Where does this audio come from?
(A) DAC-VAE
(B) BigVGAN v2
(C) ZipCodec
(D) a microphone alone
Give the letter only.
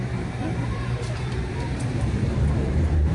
B